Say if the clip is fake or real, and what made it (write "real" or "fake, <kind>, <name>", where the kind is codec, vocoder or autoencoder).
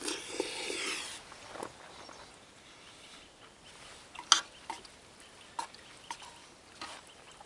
real